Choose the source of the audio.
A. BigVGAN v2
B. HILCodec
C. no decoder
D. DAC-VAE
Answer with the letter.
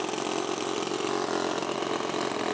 C